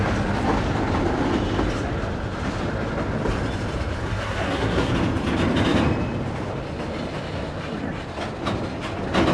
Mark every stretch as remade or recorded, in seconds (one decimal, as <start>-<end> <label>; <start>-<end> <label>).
0.0-4.0 recorded; 4.0-4.9 remade; 4.9-9.3 recorded